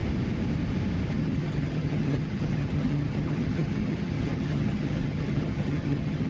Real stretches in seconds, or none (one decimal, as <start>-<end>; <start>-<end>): 0.0-1.1